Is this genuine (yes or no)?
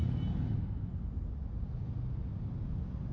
yes